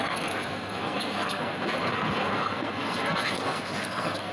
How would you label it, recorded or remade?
remade